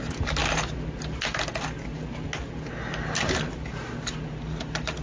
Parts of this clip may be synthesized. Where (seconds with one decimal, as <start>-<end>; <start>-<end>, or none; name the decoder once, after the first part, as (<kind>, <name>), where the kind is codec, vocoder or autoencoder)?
none